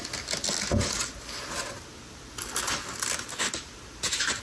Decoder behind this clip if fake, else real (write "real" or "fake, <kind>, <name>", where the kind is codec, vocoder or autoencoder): real